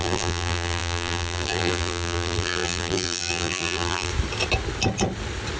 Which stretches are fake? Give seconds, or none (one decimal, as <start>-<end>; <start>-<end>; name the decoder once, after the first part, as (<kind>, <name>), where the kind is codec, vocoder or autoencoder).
0.0-4.1 (vocoder, BigVGAN v2)